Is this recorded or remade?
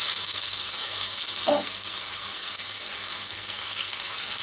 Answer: remade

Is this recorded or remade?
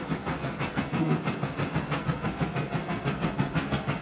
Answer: remade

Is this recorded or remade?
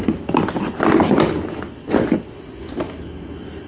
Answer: recorded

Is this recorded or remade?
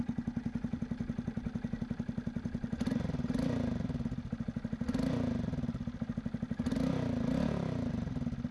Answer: recorded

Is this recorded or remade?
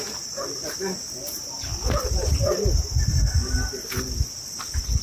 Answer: recorded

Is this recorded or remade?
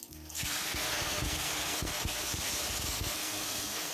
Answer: remade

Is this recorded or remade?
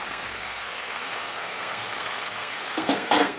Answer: remade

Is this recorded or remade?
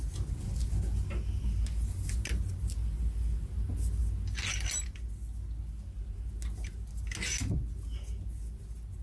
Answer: recorded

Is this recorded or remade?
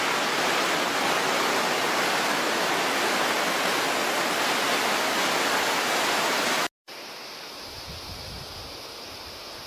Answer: recorded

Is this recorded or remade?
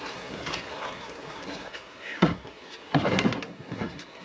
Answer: remade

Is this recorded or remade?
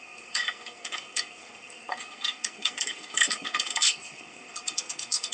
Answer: remade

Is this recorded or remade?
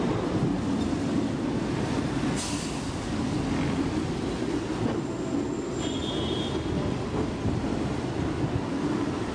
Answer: recorded